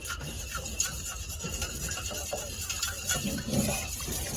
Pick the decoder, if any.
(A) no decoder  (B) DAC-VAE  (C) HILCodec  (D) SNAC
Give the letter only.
A